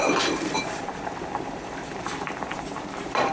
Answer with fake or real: fake